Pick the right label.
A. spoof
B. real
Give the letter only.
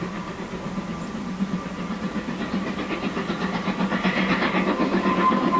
B